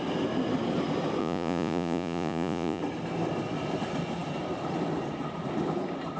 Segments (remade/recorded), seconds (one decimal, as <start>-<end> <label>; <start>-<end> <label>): 0.0-1.2 recorded; 1.2-2.8 remade; 2.8-6.2 recorded